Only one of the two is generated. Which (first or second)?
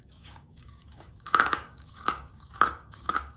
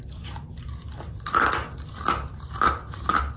first